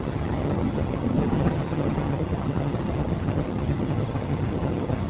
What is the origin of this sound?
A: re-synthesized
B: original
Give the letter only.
A